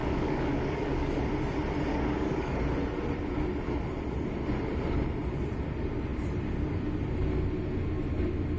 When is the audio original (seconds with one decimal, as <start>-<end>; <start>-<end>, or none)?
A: 1.1-1.9; 2.6-8.6